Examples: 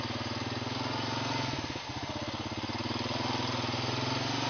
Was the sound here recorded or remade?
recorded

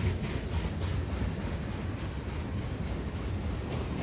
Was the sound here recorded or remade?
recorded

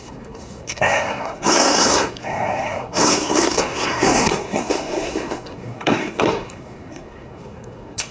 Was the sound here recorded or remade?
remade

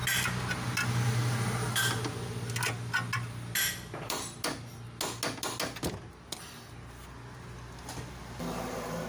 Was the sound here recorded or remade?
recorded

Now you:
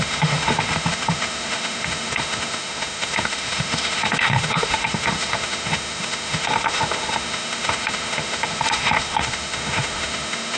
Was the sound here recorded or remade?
remade